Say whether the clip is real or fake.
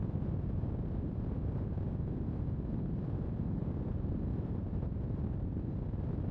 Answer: real